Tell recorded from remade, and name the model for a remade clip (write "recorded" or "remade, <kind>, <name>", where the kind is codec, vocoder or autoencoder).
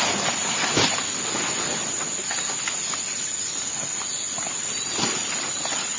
recorded